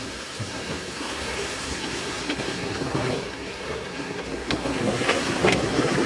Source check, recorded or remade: remade